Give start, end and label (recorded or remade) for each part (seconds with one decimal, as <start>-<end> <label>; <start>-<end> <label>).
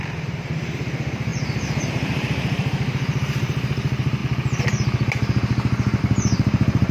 0.0-4.2 remade; 4.2-6.0 recorded; 6.0-6.9 remade